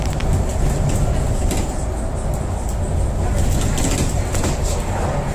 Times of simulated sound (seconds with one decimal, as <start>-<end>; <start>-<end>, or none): none